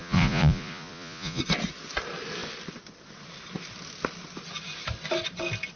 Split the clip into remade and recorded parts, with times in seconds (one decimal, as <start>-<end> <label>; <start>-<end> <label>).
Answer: 0.0-1.4 remade; 1.4-5.8 recorded